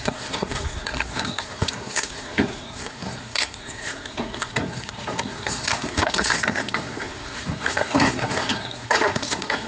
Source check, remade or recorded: remade